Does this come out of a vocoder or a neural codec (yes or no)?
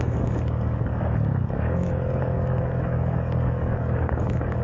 yes